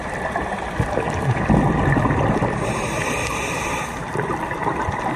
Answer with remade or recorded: recorded